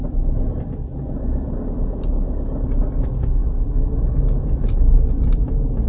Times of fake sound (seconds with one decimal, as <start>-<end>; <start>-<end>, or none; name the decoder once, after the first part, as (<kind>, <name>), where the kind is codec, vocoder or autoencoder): none